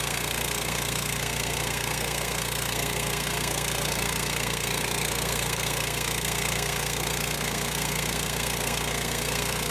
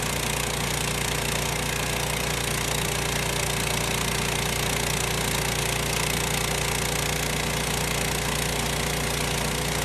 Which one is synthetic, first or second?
first